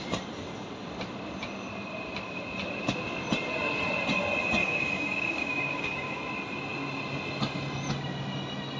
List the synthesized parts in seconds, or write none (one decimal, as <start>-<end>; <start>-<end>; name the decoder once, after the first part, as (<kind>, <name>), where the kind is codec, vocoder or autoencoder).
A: 4.6-6.2 (codec, DAC)